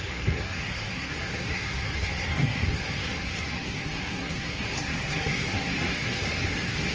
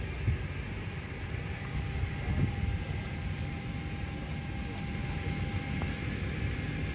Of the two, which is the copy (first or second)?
first